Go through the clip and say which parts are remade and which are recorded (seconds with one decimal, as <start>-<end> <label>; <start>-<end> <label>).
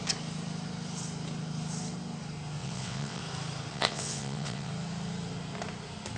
0.0-2.6 recorded; 2.6-3.2 remade; 3.2-3.7 recorded; 3.7-4.7 remade; 4.7-6.2 recorded